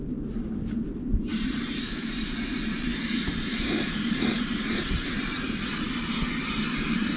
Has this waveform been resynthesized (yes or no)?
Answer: yes